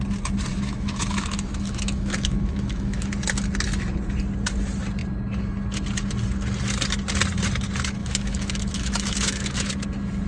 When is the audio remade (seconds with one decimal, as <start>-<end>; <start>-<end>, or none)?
0.5-3.1; 8.0-9.7